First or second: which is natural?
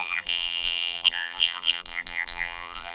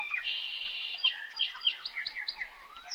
second